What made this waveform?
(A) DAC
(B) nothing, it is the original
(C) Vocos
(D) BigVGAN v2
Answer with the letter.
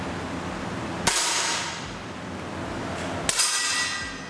B